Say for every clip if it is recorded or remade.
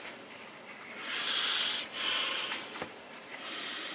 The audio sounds recorded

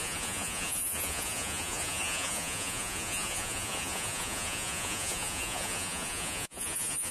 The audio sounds remade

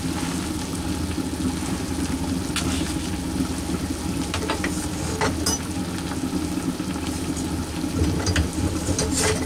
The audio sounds recorded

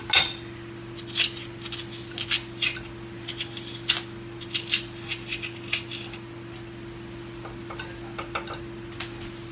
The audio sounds recorded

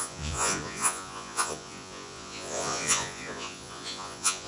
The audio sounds remade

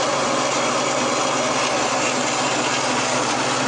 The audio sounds recorded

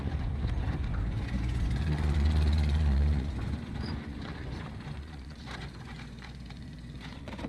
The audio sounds remade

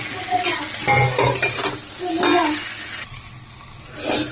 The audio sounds recorded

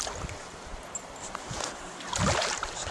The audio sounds recorded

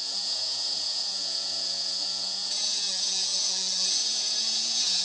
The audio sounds remade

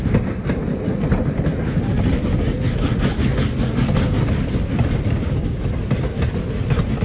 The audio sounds recorded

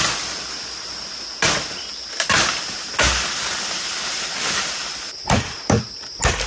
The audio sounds recorded